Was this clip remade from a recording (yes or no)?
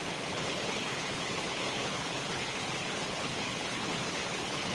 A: yes